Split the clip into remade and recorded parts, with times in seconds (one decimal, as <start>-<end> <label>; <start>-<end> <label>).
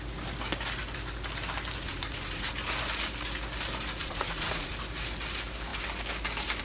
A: 0.0-1.8 recorded; 1.8-2.5 remade; 2.5-4.0 recorded; 4.0-4.7 remade; 4.7-6.6 recorded